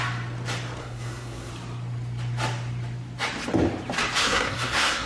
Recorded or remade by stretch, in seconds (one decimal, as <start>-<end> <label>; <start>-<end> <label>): 0.0-0.8 recorded; 0.8-1.5 remade; 1.5-4.2 recorded; 4.2-5.1 remade